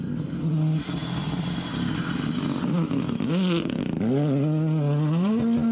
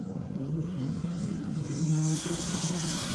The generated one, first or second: second